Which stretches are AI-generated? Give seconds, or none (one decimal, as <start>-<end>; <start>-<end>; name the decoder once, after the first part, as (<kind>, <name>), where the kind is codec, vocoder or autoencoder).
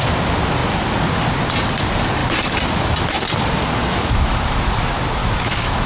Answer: 3.8-4.8 (autoencoder, DAC-VAE); 5.2-5.9